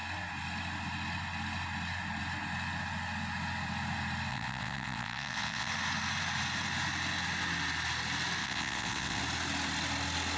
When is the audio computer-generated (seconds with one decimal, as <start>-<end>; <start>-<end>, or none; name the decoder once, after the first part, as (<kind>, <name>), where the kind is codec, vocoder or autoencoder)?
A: 4.3-5.7 (vocoder, WaveNeXt); 8.4-9.2